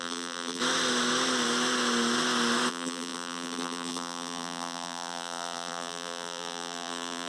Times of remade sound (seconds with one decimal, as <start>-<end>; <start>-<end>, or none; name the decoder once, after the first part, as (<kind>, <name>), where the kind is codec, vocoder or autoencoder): 0.0-0.6 (vocoder, BigVGAN v2); 2.7-7.3